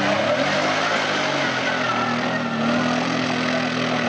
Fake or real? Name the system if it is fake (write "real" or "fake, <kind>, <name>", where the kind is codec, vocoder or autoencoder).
real